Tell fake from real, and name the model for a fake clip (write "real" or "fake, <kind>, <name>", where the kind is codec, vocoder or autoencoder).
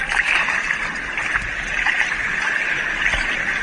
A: real